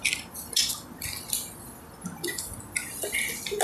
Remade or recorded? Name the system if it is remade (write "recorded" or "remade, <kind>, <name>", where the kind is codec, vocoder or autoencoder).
recorded